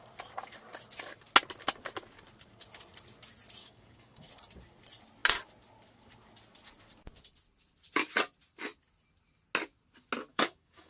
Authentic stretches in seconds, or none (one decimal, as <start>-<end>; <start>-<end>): 0.0-3.6; 4.3-10.3